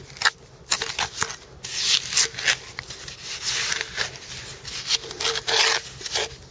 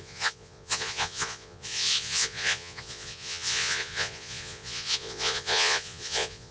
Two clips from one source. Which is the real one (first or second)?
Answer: first